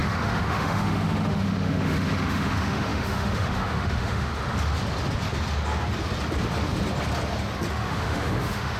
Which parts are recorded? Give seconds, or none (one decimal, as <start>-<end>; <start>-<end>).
4.3-7.7